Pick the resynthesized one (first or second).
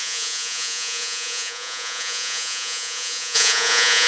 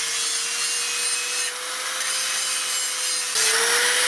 first